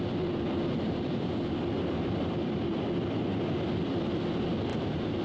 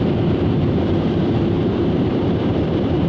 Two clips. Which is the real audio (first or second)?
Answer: first